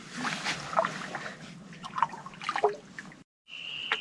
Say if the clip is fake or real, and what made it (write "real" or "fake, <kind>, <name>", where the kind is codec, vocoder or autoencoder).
real